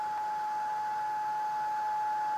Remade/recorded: recorded